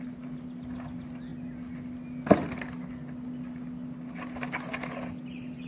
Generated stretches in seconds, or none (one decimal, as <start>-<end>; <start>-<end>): none

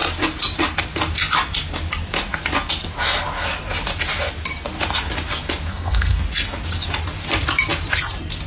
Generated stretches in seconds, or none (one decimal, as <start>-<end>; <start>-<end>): 5.7-6.2

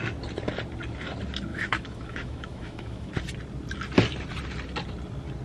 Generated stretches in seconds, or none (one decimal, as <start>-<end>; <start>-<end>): 1.5-3.1

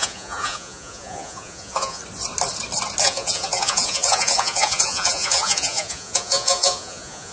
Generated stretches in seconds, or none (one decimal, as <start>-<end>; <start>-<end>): 0.0-2.0; 3.0-7.3

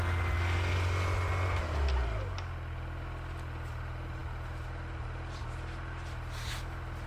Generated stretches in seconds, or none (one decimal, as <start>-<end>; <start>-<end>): none